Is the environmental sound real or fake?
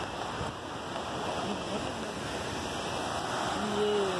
real